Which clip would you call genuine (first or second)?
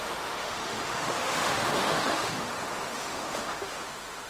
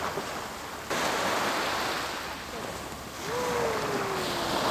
second